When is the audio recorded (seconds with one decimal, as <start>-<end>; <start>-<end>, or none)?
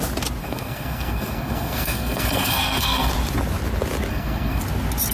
0.0-0.4; 3.1-4.1; 4.6-5.1